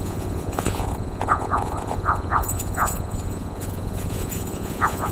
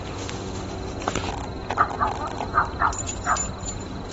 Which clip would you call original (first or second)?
second